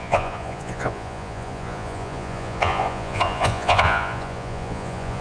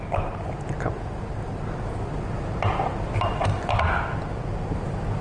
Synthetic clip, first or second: first